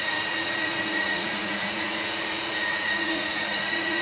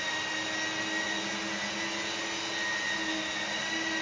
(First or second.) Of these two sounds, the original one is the second